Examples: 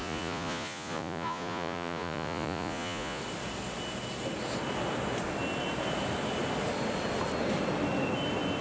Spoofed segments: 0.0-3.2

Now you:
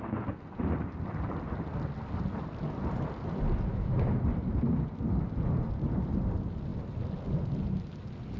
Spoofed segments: 3.7-4.2